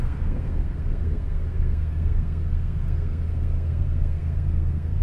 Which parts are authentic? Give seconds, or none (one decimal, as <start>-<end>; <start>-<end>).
none